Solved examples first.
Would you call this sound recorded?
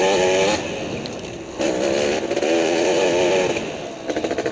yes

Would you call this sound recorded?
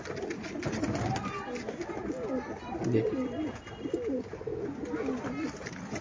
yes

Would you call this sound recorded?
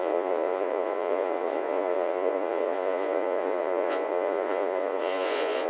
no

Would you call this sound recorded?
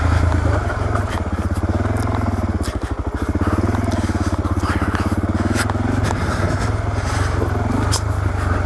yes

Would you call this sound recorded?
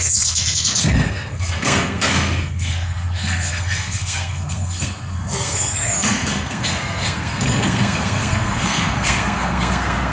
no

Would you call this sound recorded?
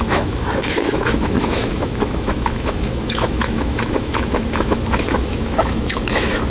no